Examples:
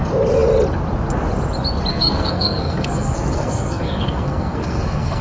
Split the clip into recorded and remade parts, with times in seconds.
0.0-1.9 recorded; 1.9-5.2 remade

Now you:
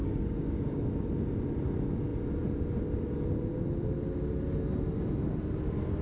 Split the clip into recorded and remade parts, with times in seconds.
0.0-0.9 remade; 0.9-6.0 recorded

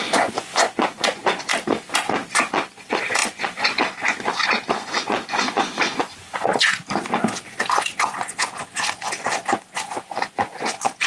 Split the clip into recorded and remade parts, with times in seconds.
0.0-1.5 remade; 1.5-2.1 recorded; 2.1-11.1 remade